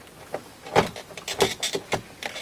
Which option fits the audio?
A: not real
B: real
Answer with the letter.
B